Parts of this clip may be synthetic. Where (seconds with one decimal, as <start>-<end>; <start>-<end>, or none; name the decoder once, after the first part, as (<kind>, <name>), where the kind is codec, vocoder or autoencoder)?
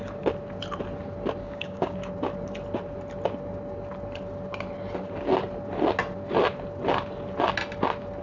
1.4-2.1 (codec, DAC)